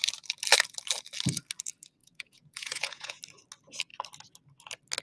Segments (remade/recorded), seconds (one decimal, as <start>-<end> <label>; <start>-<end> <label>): 0.0-2.0 recorded; 2.0-3.2 remade; 3.2-5.0 recorded

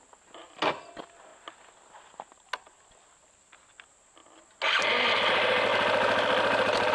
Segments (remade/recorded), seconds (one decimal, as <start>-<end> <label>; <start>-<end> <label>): 0.0-6.9 recorded

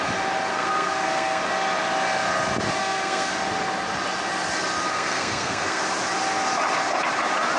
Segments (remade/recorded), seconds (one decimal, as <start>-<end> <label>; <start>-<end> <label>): 0.0-0.5 recorded; 0.5-1.4 remade; 1.4-2.8 recorded; 2.8-3.3 remade; 3.3-4.9 recorded; 4.9-5.8 remade; 5.8-7.6 recorded

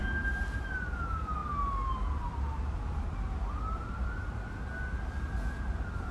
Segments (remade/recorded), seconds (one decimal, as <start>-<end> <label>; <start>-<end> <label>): 0.0-6.1 recorded

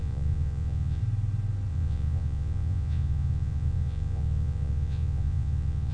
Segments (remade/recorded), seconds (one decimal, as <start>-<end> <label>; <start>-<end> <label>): 0.0-1.0 remade; 1.0-1.7 recorded; 1.7-5.9 remade